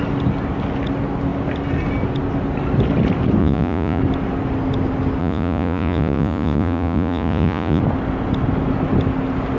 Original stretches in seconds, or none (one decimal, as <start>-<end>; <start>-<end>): 0.0-3.4; 4.0-5.2; 7.8-9.6